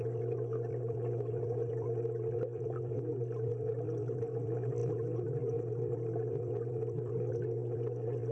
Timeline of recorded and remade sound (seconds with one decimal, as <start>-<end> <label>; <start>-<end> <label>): 0.0-8.3 recorded